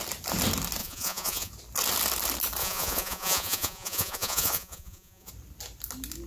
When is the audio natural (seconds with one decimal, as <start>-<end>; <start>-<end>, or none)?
0.0-0.8; 1.5-2.6; 5.3-6.3